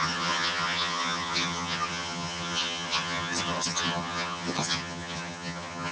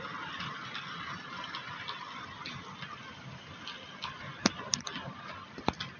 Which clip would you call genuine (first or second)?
second